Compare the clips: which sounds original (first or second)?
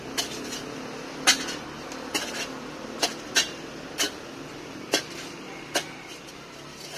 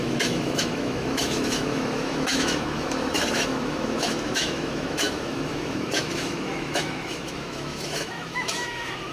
first